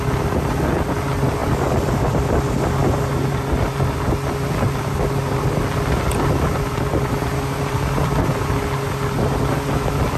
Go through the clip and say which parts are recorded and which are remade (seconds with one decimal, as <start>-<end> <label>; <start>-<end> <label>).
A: 0.0-10.2 recorded